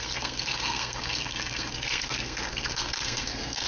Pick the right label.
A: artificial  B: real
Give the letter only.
A